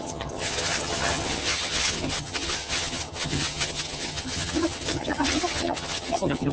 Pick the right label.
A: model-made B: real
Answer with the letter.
A